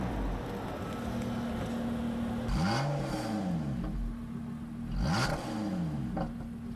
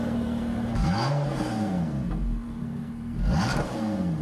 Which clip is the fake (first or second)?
second